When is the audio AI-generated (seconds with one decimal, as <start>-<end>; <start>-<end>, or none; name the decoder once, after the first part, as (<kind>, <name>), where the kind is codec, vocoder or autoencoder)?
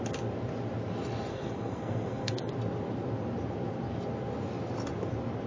1.3-2.5 (codec, SNAC)